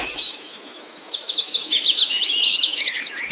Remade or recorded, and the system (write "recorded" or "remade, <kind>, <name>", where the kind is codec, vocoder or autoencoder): remade, autoencoder, DAC-VAE